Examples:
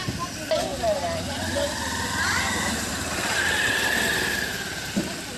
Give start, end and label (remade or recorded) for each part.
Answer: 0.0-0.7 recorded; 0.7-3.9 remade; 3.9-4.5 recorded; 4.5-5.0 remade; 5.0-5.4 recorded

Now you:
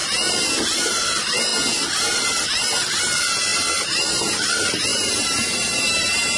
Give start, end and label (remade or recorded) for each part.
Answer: 0.0-4.9 recorded; 4.9-6.4 remade

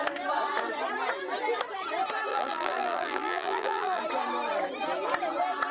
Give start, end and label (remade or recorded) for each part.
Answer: 0.0-2.3 recorded; 2.3-4.0 remade; 4.0-5.7 recorded

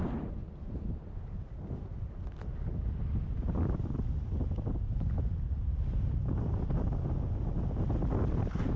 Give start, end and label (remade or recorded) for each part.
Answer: 0.0-8.8 recorded

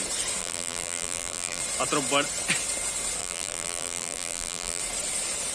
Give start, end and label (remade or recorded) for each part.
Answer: 0.0-0.4 recorded; 0.4-1.6 remade; 1.6-3.2 recorded; 3.2-4.8 remade; 4.8-5.5 recorded

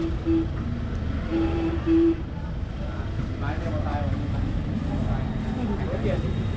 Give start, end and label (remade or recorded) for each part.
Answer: 0.0-1.3 recorded; 1.3-2.4 remade; 2.4-6.6 recorded